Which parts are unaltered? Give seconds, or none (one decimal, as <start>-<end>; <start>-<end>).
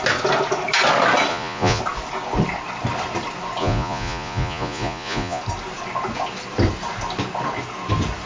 0.0-1.3; 1.8-3.6; 5.4-8.3